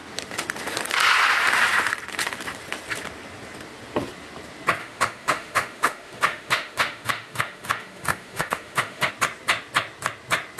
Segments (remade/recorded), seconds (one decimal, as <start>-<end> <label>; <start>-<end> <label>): 0.0-4.8 recorded; 4.8-9.1 remade; 9.1-10.6 recorded